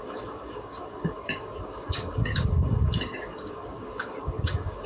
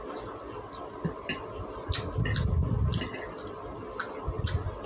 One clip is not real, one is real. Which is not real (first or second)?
first